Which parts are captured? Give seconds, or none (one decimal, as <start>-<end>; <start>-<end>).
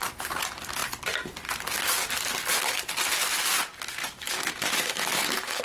0.0-4.0